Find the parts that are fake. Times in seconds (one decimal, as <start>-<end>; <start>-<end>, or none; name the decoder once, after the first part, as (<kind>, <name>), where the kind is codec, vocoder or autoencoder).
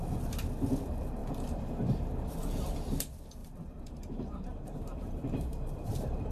1.2-2.7 (vocoder, BigVGAN v2); 3.4-6.3